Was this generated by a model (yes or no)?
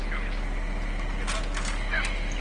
no